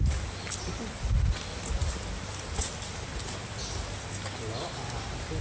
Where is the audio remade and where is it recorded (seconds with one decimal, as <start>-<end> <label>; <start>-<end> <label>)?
0.0-5.4 recorded

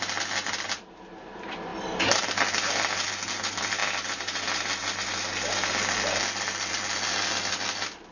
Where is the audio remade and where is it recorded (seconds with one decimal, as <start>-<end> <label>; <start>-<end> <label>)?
0.0-8.1 recorded